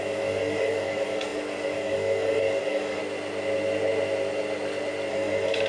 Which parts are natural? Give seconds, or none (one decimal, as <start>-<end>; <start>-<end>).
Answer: 3.0-5.1